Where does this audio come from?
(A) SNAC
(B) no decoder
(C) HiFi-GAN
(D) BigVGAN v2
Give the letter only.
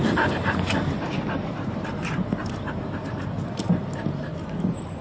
D